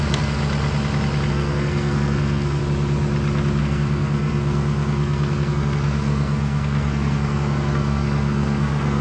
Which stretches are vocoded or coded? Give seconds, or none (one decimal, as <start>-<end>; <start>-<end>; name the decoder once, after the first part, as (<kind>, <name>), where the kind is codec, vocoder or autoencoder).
0.0-0.4 (codec, SNAC); 1.3-2.6; 3.6-9.0